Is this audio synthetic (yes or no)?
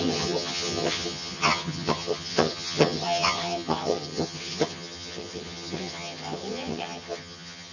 yes